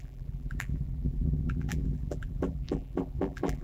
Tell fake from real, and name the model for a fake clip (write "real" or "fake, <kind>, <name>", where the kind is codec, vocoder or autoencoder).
fake, vocoder, BigVGAN v2